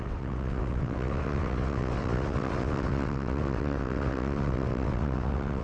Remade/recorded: remade